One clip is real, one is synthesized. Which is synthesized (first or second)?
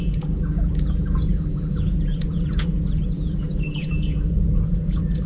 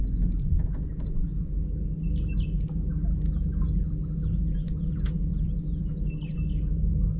first